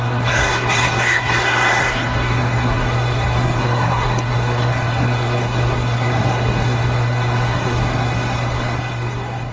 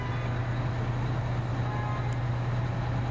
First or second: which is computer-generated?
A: first